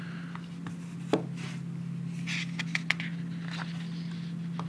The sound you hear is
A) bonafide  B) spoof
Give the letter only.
A